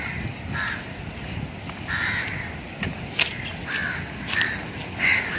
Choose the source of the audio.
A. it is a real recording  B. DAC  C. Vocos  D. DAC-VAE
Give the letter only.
A